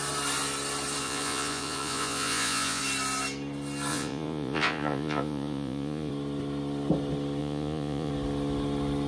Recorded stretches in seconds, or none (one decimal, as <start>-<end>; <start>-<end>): 0.0-1.0; 2.8-3.9; 6.1-7.4; 8.1-9.1